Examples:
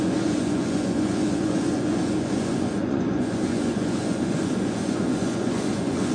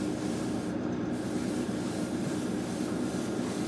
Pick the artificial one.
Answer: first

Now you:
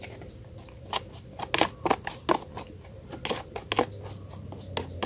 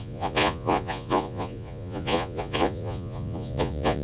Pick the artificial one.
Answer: second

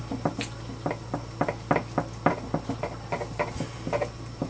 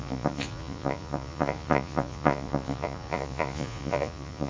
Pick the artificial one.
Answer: second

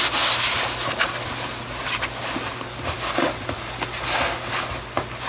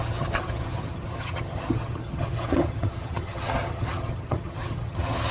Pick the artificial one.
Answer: second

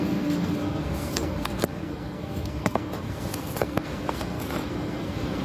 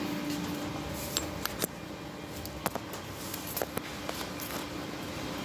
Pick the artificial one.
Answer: first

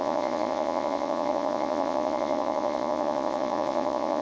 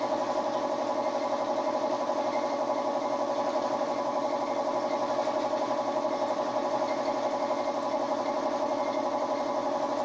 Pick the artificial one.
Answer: first